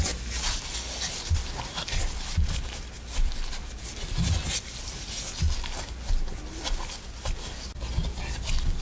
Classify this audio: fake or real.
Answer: real